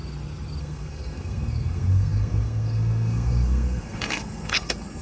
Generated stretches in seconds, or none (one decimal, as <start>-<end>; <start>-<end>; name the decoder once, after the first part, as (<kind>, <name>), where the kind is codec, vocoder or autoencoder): 0.6-5.0 (codec, SNAC)